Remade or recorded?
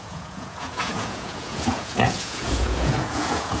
remade